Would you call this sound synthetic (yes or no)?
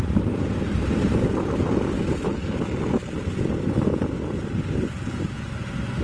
no